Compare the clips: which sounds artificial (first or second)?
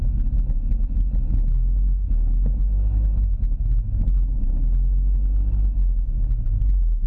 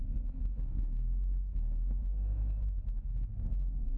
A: second